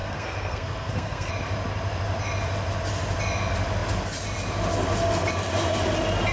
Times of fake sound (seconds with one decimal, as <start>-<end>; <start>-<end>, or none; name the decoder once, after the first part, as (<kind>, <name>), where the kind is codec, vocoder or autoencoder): 0.0-1.3 (codec, SNAC)